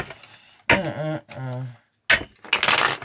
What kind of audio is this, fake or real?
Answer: real